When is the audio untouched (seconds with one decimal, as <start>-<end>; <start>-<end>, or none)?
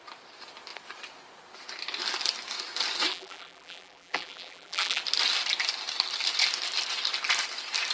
0.0-3.1; 5.0-7.9